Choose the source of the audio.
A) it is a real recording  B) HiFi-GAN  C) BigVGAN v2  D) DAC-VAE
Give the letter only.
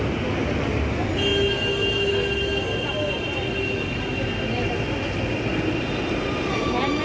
A